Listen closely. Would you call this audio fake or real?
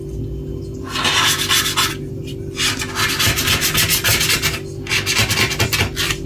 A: real